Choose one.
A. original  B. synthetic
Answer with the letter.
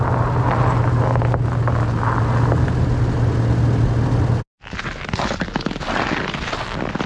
A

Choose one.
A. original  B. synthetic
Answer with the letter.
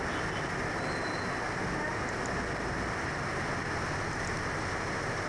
A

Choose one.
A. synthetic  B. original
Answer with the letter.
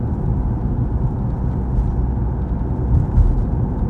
B